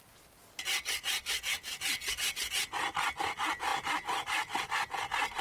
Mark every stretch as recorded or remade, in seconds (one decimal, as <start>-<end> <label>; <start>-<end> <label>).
0.0-5.4 recorded